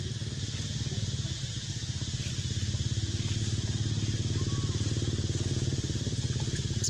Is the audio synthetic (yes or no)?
no